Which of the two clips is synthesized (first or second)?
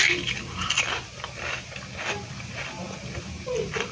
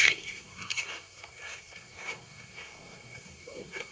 second